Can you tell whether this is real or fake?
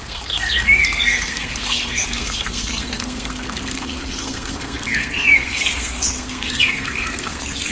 fake